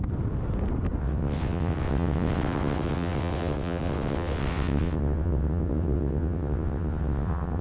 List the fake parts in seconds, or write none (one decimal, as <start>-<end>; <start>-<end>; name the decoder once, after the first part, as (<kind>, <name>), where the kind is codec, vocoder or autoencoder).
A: 1.0-7.6 (vocoder, WaveNeXt)